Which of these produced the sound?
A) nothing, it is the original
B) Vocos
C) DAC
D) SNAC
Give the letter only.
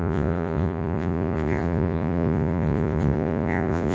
B